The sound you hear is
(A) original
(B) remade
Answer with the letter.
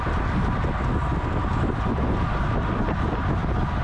A